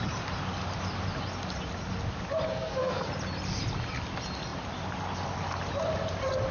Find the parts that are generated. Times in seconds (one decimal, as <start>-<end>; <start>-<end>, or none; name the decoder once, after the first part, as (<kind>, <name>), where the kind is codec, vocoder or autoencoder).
2.5-3.1 (codec, SNAC)